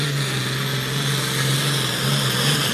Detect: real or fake real